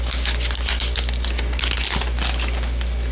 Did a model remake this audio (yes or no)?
no